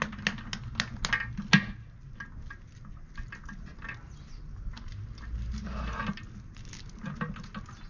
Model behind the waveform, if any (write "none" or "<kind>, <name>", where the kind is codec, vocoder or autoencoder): none